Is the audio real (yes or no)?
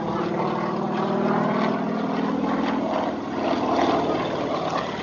yes